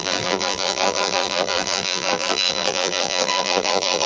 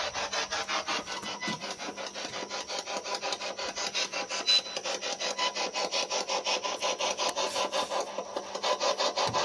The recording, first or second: second